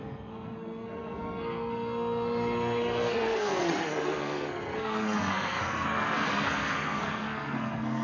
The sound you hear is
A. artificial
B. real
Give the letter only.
A